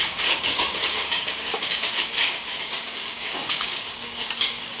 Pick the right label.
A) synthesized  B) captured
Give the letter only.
A